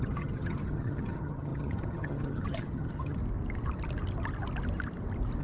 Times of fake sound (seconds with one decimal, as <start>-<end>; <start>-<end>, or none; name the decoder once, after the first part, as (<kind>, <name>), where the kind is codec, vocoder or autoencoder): 0.0-3.2 (vocoder, HiFi-GAN)